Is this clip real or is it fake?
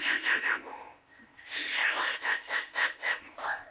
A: fake